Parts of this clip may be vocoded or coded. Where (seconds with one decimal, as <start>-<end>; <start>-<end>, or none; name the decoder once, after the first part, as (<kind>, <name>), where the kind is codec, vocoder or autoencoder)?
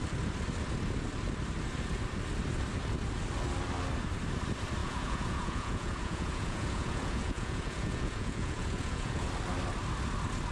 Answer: 4.8-9.3 (vocoder, Vocos)